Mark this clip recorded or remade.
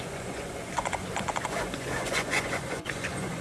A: remade